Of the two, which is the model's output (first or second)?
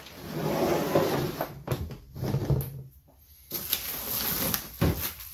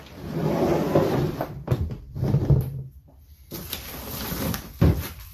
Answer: second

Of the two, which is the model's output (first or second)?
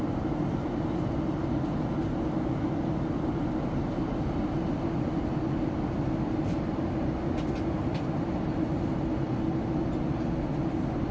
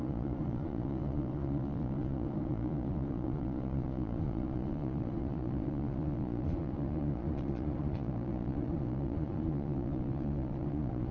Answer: second